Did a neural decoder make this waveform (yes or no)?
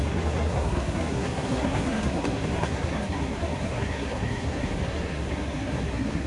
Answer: yes